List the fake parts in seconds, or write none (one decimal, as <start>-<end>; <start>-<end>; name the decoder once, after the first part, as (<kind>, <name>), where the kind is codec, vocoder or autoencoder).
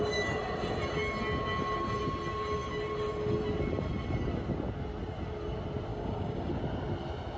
5.9-6.5 (codec, DAC)